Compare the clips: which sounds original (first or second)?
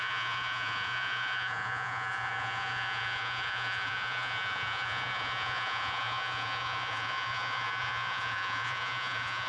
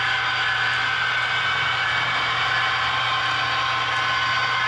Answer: second